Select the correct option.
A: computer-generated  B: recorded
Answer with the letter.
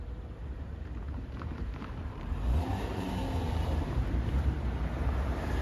A